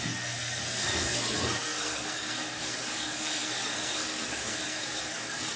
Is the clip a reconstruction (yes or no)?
yes